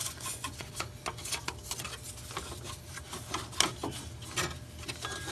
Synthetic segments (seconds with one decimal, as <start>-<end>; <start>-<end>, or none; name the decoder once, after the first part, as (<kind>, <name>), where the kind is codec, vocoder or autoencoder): 0.0-0.7 (vocoder, Vocos)